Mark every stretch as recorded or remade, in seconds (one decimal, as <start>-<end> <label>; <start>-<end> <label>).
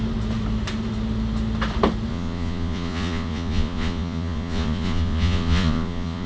0.0-2.1 recorded; 2.1-6.3 remade